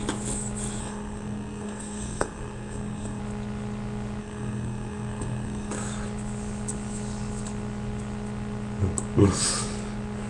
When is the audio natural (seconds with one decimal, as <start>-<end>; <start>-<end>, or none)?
0.0-0.8; 3.2-4.2; 5.7-10.3